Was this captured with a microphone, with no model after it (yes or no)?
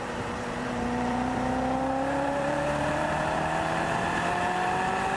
no